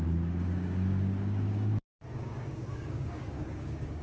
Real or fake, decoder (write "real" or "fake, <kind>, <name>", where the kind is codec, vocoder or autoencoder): fake, codec, DAC